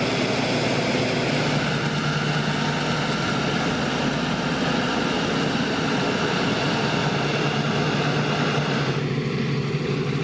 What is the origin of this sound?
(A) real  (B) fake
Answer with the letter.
A